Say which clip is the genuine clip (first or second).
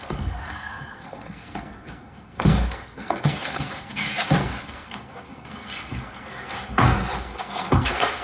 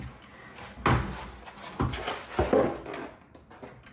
second